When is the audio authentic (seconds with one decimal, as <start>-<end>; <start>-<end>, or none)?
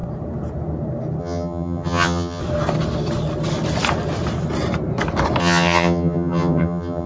0.0-1.2; 2.4-5.4